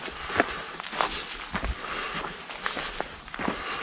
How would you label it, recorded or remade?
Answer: recorded